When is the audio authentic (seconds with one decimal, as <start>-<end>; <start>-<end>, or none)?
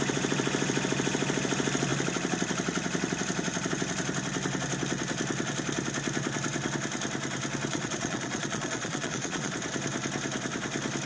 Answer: 0.0-7.7; 9.5-11.1